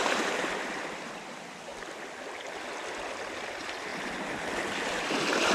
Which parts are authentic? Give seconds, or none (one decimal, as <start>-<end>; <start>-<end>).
1.7-3.3; 3.9-4.9